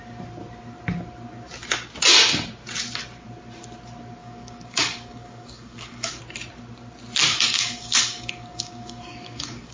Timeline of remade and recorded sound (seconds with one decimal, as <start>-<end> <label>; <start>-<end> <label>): 0.0-4.2 recorded; 4.2-6.2 remade; 6.2-7.3 recorded; 7.3-9.7 remade